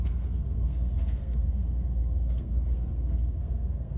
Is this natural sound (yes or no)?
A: no